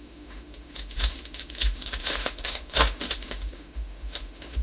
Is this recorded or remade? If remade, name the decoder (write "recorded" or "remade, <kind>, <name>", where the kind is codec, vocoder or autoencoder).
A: remade, autoencoder, DAC-VAE